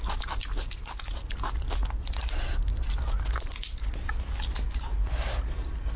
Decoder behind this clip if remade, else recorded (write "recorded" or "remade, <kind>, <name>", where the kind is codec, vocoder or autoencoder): recorded